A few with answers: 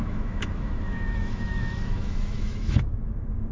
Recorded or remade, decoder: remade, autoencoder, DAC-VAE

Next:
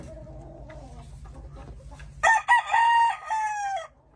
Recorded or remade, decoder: recorded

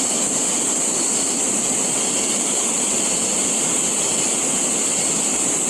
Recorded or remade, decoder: recorded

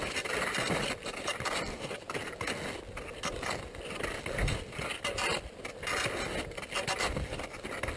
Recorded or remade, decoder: recorded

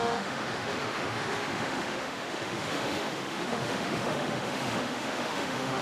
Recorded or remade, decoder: remade, autoencoder, DAC-VAE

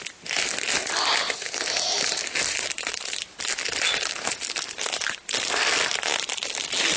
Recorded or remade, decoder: recorded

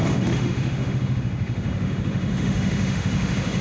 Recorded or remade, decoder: remade, autoencoder, DAC-VAE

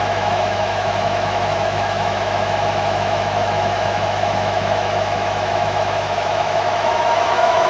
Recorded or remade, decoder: remade, autoencoder, DAC-VAE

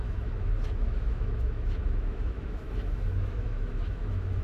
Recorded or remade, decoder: remade, autoencoder, DAC-VAE